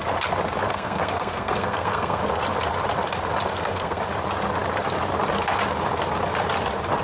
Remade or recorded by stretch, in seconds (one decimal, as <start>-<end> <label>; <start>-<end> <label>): 0.0-0.7 recorded; 0.7-2.2 remade; 2.2-3.5 recorded; 3.5-4.0 remade; 4.0-7.0 recorded